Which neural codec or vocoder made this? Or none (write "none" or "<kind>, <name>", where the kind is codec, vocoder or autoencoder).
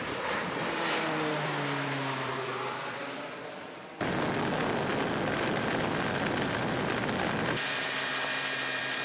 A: vocoder, BigVGAN v2